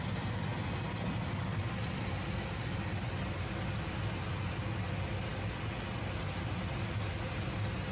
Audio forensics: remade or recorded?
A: recorded